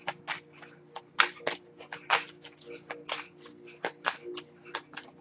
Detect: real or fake real